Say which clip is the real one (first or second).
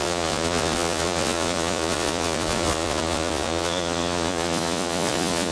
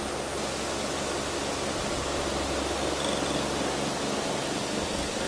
second